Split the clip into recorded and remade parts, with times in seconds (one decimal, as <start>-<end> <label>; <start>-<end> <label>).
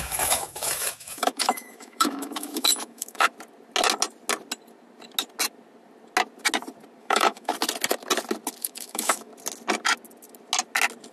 0.0-3.3 remade; 3.3-7.0 recorded; 7.0-7.5 remade; 7.5-8.6 recorded; 8.6-9.3 remade; 9.3-11.1 recorded